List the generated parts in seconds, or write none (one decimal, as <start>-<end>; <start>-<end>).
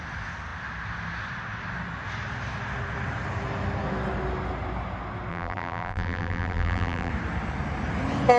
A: 5.3-7.1